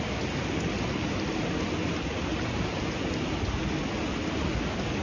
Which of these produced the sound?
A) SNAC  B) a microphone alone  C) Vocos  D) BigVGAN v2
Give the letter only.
B